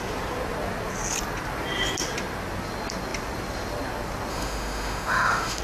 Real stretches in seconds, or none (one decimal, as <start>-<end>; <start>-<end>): 0.0-4.3